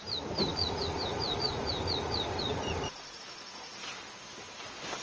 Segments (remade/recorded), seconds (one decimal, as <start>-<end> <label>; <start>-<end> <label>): 0.0-0.5 recorded; 0.5-3.2 remade; 3.2-5.0 recorded